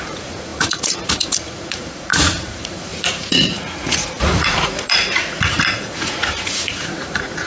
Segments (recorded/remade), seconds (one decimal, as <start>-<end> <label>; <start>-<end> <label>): 0.0-7.5 remade